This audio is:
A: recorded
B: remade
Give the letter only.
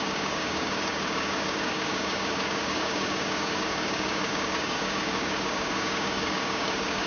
B